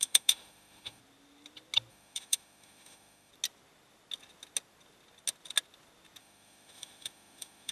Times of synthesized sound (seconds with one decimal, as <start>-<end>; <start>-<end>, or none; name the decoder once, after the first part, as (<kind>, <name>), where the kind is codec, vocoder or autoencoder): 0.0-1.0 (autoencoder, DAC-VAE); 1.9-3.3; 6.2-7.7